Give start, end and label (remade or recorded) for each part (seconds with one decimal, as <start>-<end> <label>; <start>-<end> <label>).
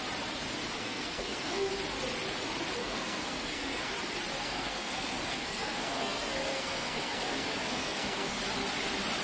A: 0.0-0.8 recorded; 0.8-1.7 remade; 1.7-2.8 recorded; 2.8-3.9 remade; 3.9-4.4 recorded; 4.4-8.4 remade; 8.4-9.2 recorded